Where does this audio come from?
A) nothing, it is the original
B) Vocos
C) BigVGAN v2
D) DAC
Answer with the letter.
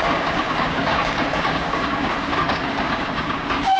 D